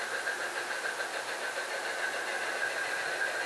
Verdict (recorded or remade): recorded